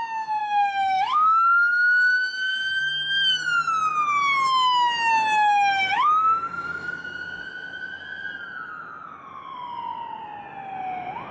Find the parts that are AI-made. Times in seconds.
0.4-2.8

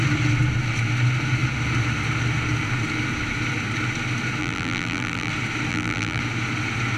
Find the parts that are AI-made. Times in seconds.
4.4-5.3; 5.7-6.2

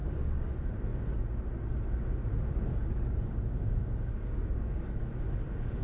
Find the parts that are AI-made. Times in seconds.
0.0-0.5; 2.7-5.0

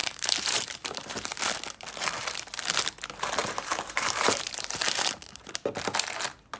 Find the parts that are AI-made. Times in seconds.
0.0-1.4; 3.4-5.5

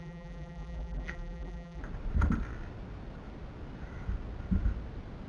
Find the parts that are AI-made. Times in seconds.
0.0-1.8

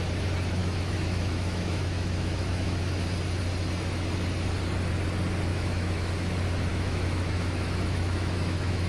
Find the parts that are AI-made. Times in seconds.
0.6-3.0; 5.5-6.1; 6.7-8.9